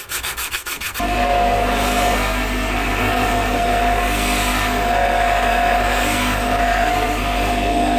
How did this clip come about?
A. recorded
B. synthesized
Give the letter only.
B